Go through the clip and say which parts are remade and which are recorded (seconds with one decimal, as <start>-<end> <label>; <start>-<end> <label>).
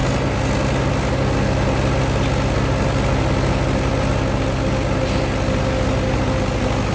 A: 0.0-6.9 recorded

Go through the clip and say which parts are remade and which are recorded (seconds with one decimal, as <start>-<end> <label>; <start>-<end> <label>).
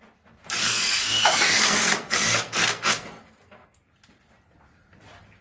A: 0.0-0.6 recorded; 0.6-3.8 remade; 3.8-5.4 recorded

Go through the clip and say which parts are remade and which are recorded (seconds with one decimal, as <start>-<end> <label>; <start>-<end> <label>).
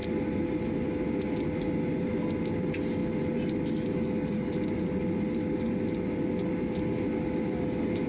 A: 0.0-8.1 recorded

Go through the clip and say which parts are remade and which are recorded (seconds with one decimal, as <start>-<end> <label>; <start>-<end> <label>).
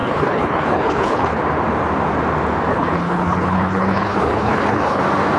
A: 0.0-1.4 remade; 1.4-2.7 recorded; 2.7-5.0 remade; 5.0-5.4 recorded